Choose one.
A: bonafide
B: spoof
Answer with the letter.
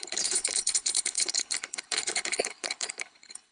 B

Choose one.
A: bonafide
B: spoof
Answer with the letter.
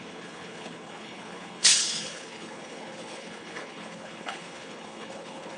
B